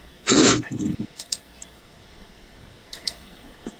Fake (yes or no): yes